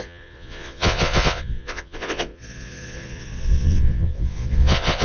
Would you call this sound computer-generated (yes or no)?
yes